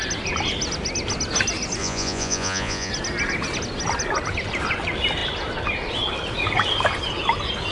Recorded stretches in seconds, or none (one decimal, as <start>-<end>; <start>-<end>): 0.0-1.8; 2.9-7.7